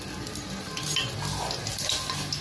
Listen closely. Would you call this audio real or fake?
real